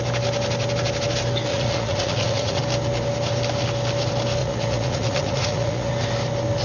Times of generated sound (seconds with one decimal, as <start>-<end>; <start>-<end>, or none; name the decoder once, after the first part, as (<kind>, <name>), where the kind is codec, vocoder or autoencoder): 1.5-2.6 (vocoder, Vocos); 4.4-5.9

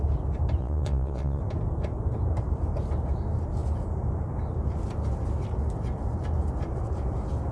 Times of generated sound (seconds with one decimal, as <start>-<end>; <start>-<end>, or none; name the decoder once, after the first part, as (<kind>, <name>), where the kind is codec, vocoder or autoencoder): 0.6-1.4 (vocoder, Vocos)